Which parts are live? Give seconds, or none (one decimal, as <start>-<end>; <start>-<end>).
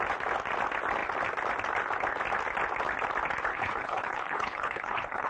0.0-3.5